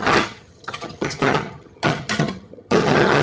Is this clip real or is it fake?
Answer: fake